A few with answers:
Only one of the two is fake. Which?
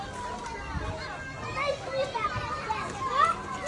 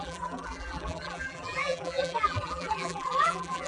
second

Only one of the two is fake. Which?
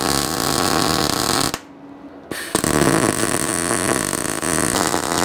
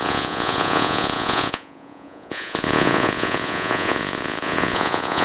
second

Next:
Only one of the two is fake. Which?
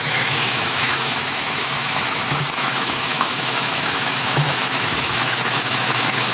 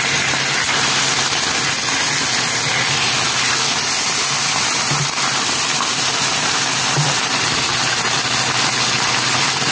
first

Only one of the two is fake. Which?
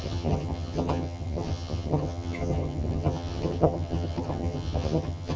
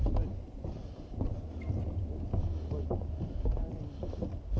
first